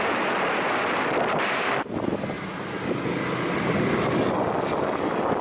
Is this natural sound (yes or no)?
yes